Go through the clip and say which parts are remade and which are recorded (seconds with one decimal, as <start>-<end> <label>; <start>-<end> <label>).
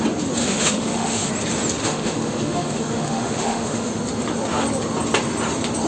0.0-0.4 recorded; 0.4-1.3 remade; 1.3-1.8 recorded; 1.8-3.9 remade; 3.9-5.9 recorded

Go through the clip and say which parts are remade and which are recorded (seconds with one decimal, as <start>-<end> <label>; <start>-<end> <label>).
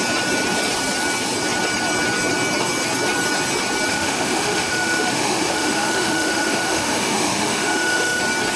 0.0-3.9 recorded; 3.9-8.2 remade; 8.2-8.6 recorded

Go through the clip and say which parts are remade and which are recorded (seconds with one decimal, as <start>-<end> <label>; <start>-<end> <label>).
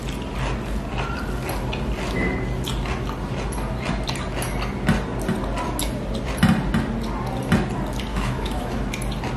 0.0-8.1 recorded; 8.1-8.9 remade; 8.9-9.4 recorded